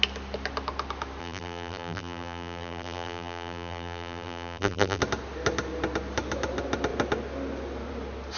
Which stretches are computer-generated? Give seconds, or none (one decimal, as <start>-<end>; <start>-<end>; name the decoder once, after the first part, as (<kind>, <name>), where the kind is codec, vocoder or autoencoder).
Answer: 1.2-5.0 (vocoder, BigVGAN v2)